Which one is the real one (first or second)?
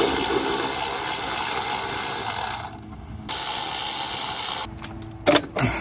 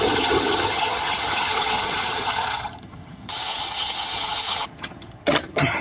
first